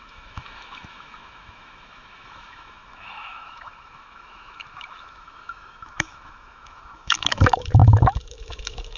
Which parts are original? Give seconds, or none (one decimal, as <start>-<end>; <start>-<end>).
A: none